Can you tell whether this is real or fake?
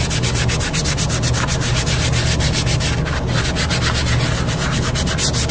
real